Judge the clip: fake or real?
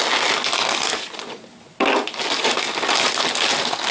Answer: real